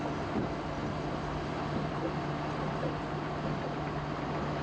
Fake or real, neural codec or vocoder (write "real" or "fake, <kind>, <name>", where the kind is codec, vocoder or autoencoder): real